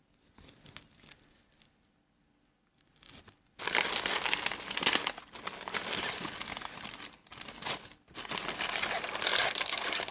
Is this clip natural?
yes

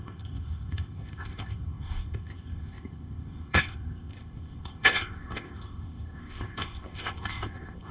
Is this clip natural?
no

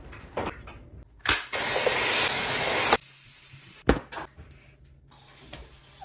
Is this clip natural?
yes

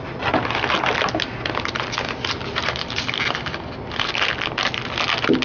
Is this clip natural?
yes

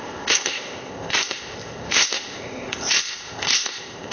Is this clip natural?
no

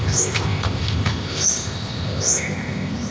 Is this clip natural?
no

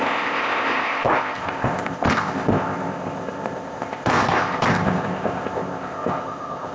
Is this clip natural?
no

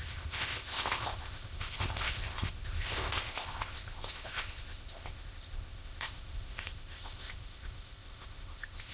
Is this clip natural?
no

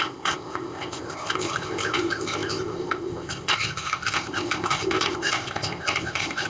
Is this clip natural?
no